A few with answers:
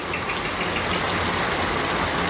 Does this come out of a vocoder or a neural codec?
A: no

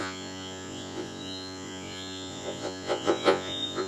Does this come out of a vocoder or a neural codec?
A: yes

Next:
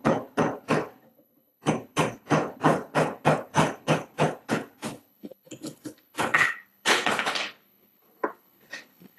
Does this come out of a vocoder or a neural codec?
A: yes